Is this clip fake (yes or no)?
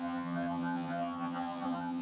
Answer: yes